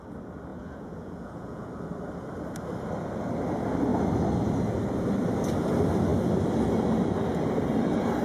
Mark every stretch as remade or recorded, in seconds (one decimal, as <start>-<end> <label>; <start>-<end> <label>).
0.0-0.5 recorded; 0.5-1.7 remade; 1.7-8.2 recorded